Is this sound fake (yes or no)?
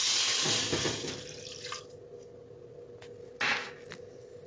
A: no